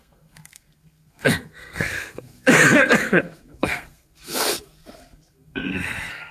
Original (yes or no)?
no